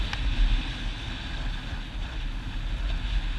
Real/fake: real